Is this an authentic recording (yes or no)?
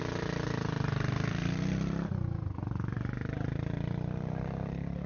yes